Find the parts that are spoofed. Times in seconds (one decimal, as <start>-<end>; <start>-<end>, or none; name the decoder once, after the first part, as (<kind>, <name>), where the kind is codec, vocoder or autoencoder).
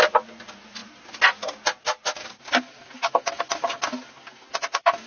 none